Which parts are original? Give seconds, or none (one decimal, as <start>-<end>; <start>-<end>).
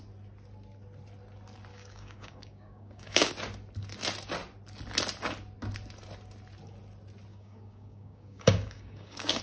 0.0-1.7; 3.3-7.3